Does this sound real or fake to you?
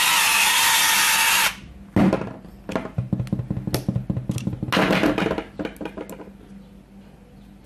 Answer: real